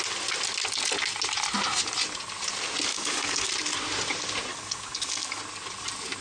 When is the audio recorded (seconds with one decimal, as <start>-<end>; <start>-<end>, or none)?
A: 0.0-2.9; 3.5-4.5; 5.4-6.2